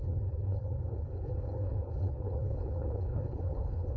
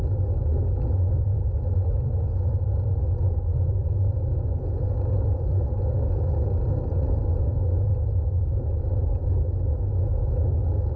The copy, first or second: first